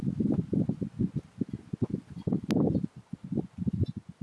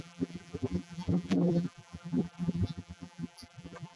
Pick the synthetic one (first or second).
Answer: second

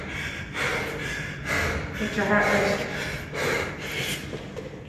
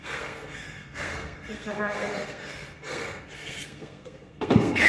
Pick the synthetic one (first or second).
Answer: second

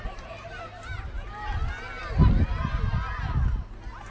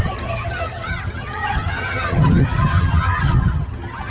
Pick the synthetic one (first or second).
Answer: second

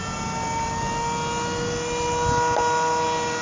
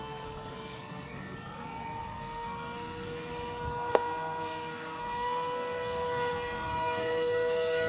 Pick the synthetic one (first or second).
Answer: second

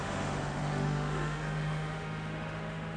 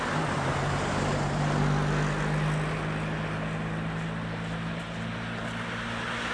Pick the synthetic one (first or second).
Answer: first